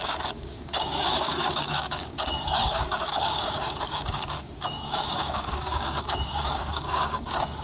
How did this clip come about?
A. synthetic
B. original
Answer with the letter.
A